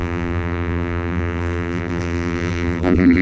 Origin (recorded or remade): remade